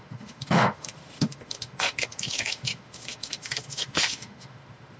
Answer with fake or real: fake